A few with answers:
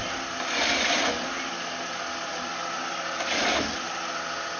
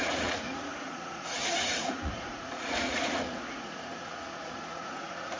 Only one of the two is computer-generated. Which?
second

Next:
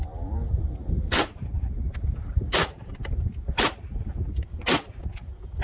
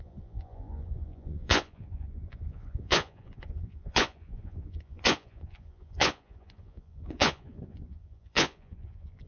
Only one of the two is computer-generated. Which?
second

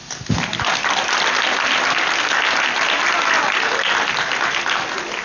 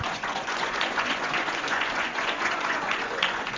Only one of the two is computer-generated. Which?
second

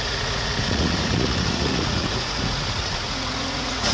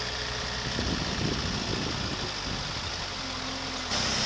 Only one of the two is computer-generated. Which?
first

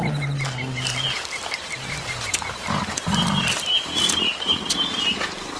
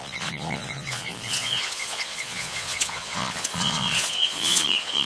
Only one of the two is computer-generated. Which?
second